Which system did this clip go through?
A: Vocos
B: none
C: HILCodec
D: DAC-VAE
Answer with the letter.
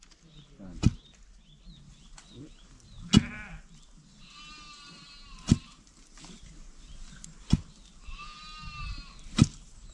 B